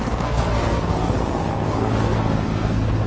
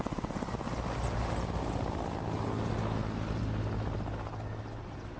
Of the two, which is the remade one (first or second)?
first